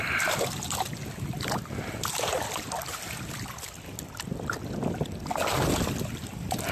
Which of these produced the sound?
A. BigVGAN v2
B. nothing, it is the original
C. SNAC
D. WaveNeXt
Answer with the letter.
B